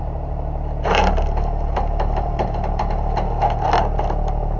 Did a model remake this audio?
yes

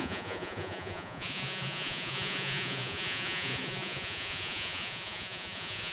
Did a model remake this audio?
yes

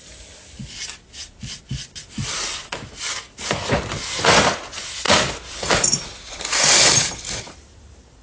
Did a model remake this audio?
no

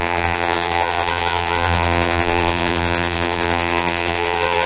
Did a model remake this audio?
yes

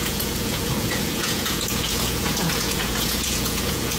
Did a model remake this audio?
yes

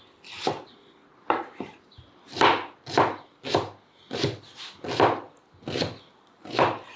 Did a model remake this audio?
no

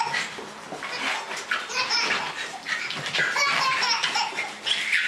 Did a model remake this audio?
no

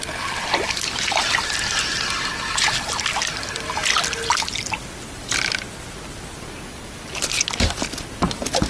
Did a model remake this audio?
no